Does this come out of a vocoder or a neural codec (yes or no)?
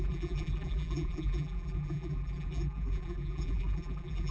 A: yes